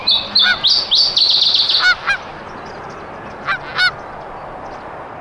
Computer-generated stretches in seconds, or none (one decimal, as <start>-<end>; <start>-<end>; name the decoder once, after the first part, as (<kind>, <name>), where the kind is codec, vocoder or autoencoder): none